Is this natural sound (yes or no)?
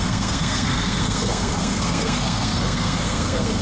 no